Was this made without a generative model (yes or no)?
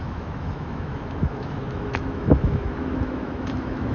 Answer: no